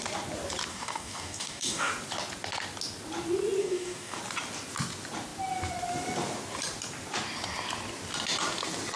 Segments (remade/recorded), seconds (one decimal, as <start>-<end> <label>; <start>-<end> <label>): 0.0-0.7 recorded; 0.7-1.9 remade; 1.9-3.6 recorded; 3.6-4.2 remade; 4.2-9.0 recorded